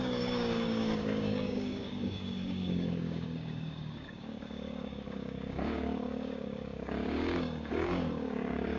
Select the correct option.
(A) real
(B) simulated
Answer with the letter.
B